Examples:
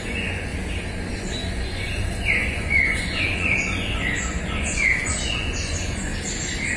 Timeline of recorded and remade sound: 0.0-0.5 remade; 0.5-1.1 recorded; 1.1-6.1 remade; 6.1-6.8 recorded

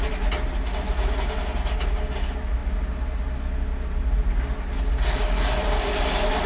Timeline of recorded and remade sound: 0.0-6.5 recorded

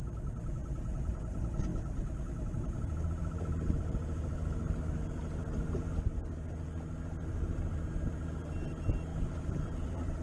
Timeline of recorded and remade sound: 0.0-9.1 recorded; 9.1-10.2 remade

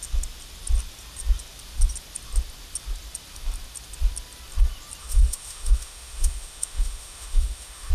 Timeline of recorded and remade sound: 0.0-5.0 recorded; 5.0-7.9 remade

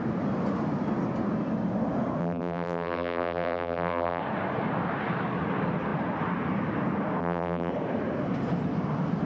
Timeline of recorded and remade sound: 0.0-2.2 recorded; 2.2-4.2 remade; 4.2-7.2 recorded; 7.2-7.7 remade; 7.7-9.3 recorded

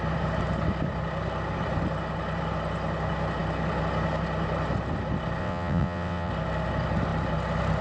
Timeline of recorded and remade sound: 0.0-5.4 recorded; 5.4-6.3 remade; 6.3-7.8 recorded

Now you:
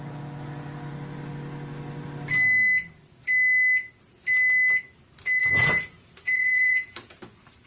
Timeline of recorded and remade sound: 0.0-5.4 recorded; 5.4-7.2 remade; 7.2-7.7 recorded

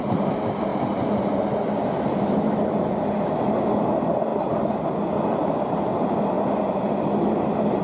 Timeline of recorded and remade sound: 0.0-4.3 recorded; 4.3-5.6 remade; 5.6-7.8 recorded